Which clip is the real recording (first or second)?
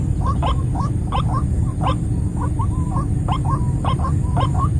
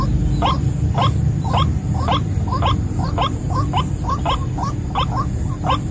second